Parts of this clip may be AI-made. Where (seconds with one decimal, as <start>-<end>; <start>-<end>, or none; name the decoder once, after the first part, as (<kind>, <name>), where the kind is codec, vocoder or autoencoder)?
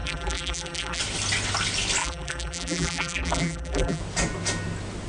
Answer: 0.0-1.0 (vocoder, BigVGAN v2); 2.0-4.0